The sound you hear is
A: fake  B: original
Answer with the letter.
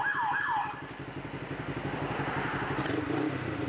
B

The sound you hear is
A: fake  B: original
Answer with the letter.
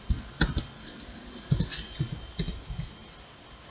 B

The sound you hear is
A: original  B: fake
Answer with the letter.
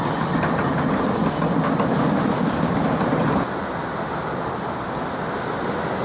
A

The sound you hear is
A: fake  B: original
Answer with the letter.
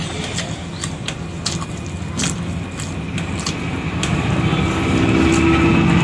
B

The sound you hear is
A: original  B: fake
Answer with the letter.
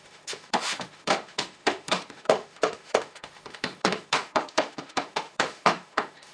B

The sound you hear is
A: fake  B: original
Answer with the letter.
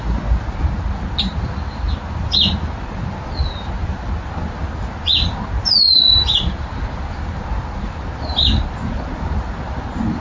B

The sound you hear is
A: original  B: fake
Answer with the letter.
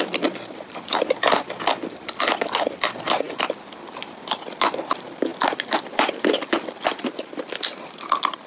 A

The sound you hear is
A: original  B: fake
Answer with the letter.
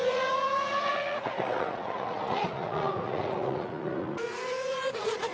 B